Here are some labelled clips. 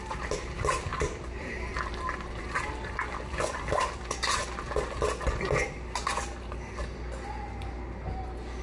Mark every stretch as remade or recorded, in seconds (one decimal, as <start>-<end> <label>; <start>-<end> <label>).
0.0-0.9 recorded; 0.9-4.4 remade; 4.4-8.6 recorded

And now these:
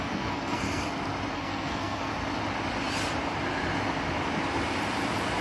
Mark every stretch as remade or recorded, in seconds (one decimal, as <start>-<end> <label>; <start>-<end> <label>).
0.0-0.8 remade; 0.8-1.3 recorded; 1.3-2.1 remade; 2.1-5.4 recorded

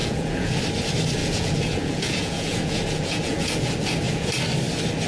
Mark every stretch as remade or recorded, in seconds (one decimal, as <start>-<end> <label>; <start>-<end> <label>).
0.0-0.6 remade; 0.6-1.2 recorded; 1.2-4.3 remade; 4.3-5.1 recorded